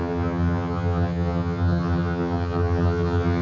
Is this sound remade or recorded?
remade